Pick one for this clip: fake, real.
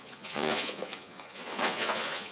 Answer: fake